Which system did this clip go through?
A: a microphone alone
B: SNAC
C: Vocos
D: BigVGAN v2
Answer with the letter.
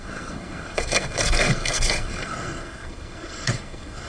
B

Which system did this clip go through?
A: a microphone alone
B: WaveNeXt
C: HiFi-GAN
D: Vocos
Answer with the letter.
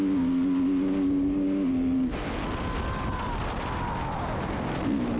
A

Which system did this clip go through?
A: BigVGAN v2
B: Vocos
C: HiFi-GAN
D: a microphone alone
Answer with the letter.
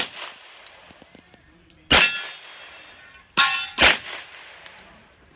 D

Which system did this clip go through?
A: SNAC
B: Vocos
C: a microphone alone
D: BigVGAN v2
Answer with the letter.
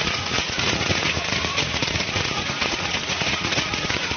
B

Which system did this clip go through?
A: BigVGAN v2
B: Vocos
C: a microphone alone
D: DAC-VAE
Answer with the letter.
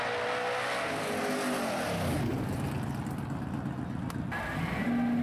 C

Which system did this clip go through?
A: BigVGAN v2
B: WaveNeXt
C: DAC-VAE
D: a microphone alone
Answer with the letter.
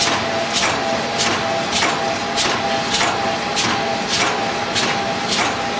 D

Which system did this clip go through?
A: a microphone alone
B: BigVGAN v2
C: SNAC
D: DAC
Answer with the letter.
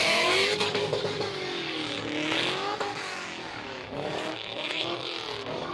D